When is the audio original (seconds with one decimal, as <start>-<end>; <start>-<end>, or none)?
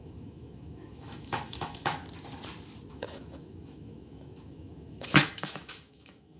2.0-2.9